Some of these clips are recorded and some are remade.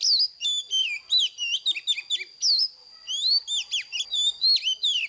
recorded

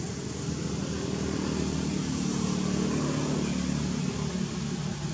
recorded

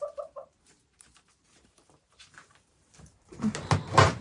remade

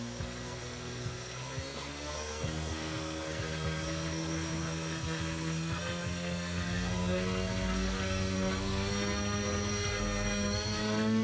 remade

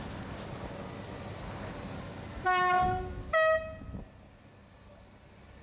recorded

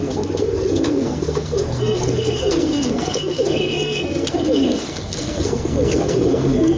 remade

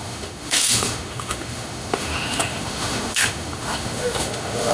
remade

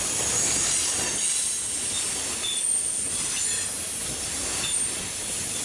recorded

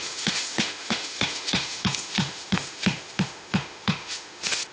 remade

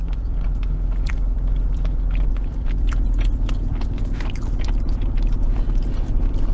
remade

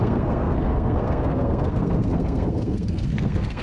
remade